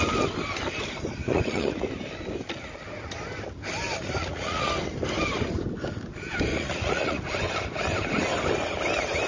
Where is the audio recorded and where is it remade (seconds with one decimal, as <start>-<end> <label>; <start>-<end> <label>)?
0.0-1.2 recorded; 1.2-1.9 remade; 1.9-4.2 recorded; 4.2-4.7 remade; 4.7-6.5 recorded; 6.5-7.2 remade; 7.2-9.3 recorded